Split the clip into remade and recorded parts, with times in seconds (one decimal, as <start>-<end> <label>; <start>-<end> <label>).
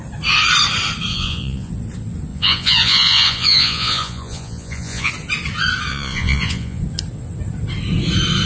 0.0-1.1 recorded; 1.1-1.7 remade; 1.7-2.3 recorded; 2.3-5.1 remade; 5.1-5.9 recorded; 5.9-6.8 remade; 6.8-8.5 recorded